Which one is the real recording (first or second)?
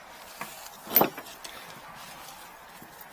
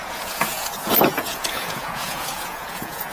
first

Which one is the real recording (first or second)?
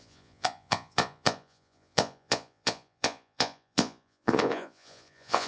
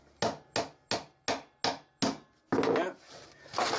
second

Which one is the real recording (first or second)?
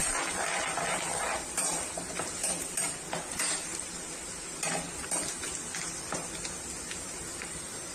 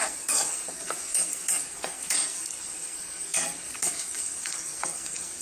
first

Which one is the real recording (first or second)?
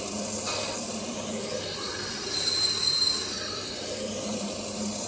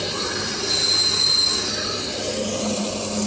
second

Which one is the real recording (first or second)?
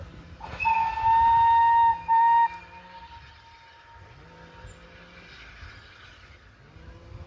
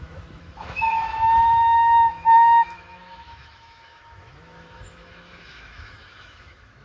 first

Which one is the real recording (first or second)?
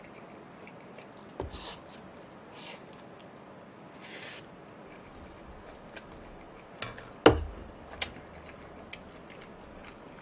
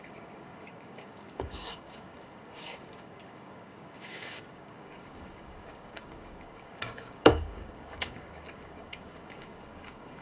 first